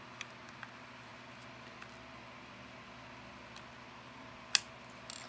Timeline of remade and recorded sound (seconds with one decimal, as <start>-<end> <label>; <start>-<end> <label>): 0.0-5.3 recorded